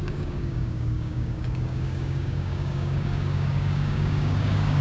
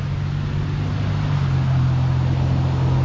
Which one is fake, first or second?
first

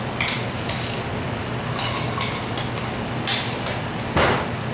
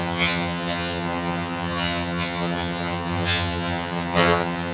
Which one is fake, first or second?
second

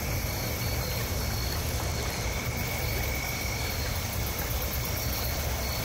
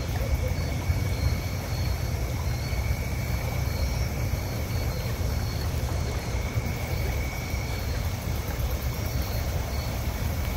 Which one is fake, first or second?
second